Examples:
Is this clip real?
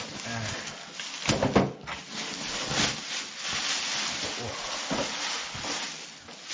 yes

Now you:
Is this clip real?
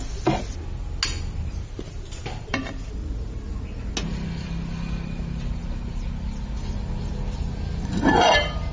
yes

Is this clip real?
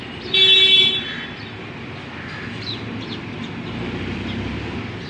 yes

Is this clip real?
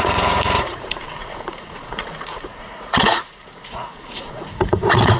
no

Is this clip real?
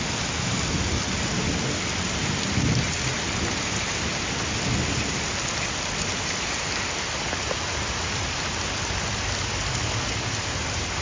yes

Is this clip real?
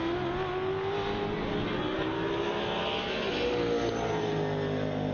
yes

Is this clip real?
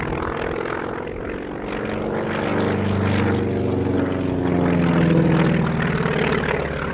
yes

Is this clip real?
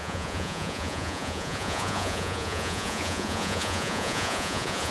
no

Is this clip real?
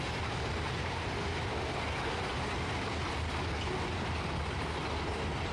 yes